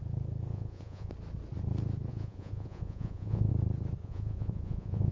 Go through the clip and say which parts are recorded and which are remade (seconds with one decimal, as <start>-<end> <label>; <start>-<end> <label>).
0.0-0.5 recorded; 0.5-1.1 remade; 1.1-2.1 recorded; 2.1-3.5 remade; 3.5-4.0 recorded; 4.0-5.1 remade

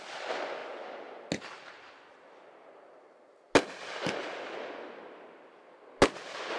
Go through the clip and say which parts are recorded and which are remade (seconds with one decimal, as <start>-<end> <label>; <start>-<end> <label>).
0.0-6.6 recorded